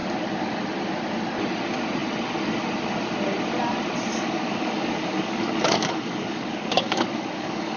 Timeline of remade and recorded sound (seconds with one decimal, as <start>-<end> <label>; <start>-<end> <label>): 0.0-4.1 recorded; 4.1-7.8 remade